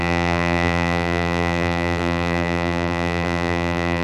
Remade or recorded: remade